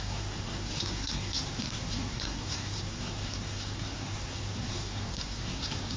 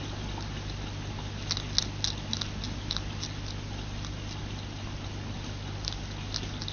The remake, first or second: first